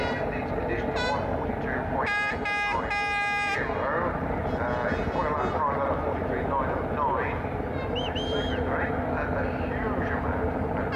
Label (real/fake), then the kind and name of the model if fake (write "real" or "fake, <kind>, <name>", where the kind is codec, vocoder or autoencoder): real